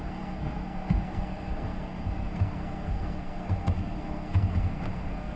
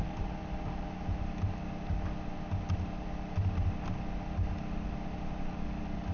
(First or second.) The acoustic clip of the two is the second